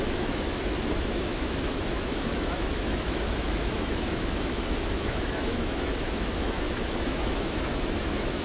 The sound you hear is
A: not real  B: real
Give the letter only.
A